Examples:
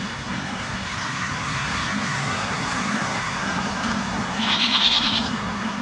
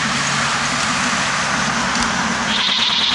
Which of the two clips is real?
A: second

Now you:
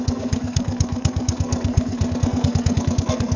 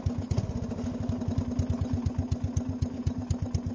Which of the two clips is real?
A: second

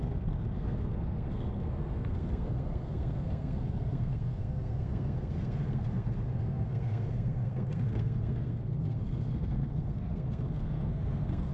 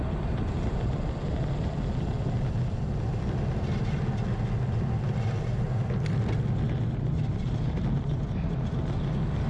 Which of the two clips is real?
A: second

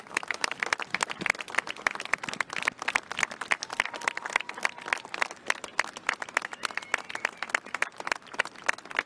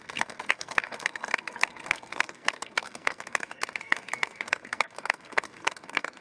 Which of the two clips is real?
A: first